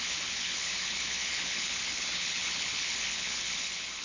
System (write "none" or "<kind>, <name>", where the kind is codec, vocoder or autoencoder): codec, HILCodec